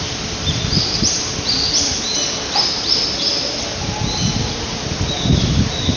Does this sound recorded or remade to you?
recorded